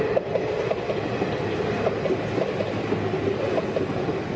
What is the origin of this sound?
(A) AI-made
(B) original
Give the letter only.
B